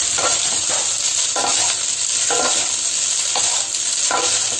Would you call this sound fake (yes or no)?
no